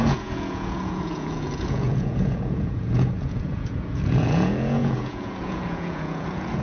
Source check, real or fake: fake